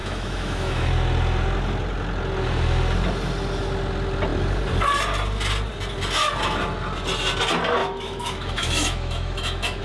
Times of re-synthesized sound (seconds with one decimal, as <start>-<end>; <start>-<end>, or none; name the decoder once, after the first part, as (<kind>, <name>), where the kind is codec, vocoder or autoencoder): 0.0-0.9 (autoencoder, DAC-VAE); 7.8-9.8

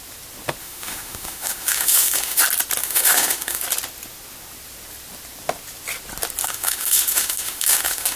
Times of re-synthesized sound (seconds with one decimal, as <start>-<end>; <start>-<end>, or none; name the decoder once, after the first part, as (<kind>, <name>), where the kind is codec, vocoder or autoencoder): 0.6-2.4 (autoencoder, DAC-VAE); 2.8-3.6; 6.4-8.2

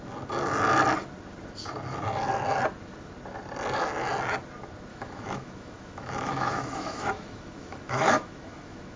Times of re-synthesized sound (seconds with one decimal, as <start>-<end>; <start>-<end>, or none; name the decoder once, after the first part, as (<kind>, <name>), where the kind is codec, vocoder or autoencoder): 4.9-9.0 (autoencoder, DAC-VAE)

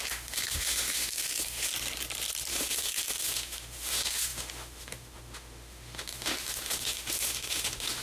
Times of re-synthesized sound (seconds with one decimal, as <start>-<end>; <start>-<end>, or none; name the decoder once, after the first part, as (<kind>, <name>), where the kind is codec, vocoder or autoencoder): 0.0-1.7 (autoencoder, DAC-VAE); 2.5-8.0

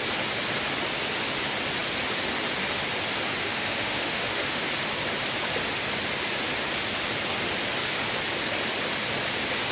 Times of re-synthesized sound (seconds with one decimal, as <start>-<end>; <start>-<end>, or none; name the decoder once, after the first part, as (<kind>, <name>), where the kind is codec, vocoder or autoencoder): 3.4-4.6 (autoencoder, DAC-VAE)